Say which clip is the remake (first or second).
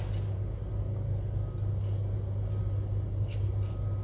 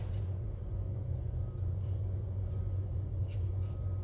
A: second